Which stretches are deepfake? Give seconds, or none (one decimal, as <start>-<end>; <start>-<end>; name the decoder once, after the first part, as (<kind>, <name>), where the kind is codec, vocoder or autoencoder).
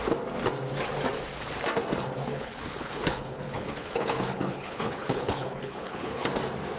2.3-6.3 (codec, HILCodec)